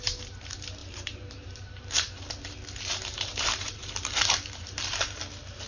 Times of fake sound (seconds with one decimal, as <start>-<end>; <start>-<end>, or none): 0.8-2.2; 3.1-5.2